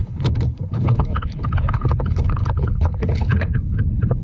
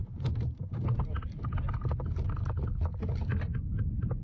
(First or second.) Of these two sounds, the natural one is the second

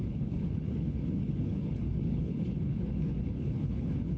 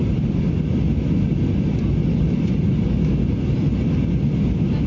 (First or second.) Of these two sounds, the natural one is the second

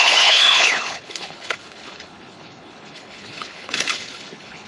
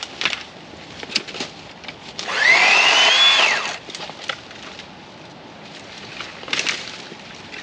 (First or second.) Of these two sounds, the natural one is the second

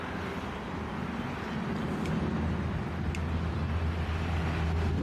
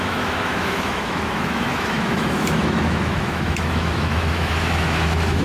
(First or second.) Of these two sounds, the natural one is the first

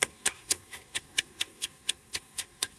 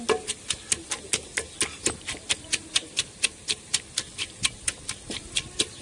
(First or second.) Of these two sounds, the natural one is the second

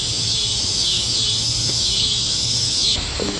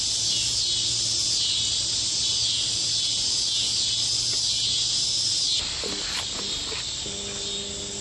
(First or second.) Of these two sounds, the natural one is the second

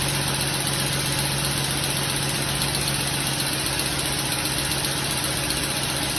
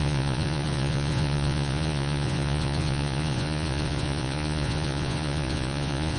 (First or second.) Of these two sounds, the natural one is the first